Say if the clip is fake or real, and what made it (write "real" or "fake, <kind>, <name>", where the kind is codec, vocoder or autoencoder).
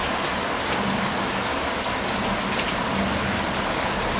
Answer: real